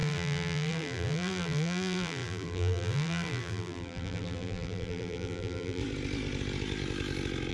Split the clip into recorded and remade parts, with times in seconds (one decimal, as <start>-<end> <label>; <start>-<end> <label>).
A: 0.0-5.8 remade; 5.8-7.5 recorded